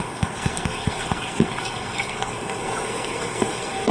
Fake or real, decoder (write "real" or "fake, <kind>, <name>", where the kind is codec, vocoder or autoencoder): fake, codec, SNAC